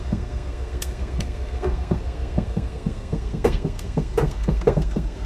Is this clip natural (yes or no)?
no